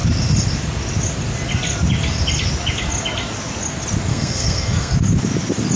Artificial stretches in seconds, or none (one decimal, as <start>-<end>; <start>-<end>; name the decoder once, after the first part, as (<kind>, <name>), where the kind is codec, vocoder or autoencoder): 4.1-4.9 (codec, SNAC)

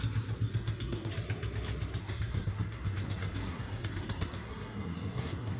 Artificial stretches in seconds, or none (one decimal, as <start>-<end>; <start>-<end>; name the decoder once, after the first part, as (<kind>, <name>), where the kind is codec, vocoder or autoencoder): 0.5-1.1 (codec, SNAC); 2.0-5.6

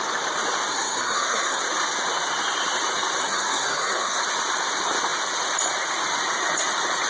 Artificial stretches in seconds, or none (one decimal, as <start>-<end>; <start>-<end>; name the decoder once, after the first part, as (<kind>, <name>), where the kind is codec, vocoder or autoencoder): 0.7-1.6 (codec, SNAC); 3.2-4.2

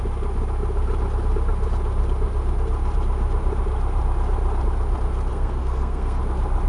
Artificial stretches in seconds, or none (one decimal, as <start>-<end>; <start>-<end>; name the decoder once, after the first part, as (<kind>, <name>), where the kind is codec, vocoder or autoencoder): 5.3-6.2 (codec, SNAC)

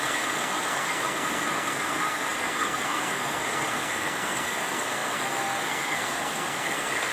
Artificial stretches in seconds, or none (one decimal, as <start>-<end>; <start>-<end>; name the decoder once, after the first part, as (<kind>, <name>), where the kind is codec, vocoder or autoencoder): 0.0-7.1 (codec, SNAC)

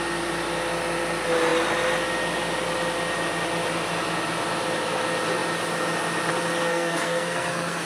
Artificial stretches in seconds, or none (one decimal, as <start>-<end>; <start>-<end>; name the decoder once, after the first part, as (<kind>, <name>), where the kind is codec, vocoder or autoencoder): 6.7-7.9 (codec, SNAC)

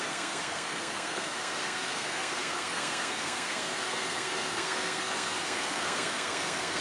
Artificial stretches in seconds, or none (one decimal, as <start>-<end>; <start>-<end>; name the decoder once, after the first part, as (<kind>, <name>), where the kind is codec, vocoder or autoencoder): 0.0-6.8 (codec, SNAC)

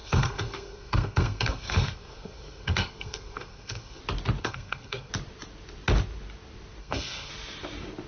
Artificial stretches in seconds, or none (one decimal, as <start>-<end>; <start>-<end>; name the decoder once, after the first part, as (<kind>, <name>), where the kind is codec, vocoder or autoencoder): 0.0-4.0 (codec, SNAC); 4.4-5.1; 6.8-7.3